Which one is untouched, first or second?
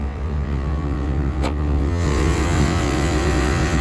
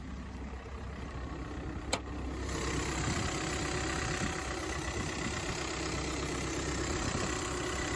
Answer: second